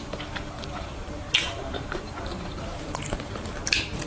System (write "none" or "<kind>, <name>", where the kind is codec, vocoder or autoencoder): vocoder, BigVGAN v2